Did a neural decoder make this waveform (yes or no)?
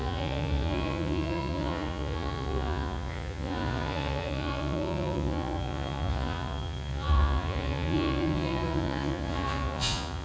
yes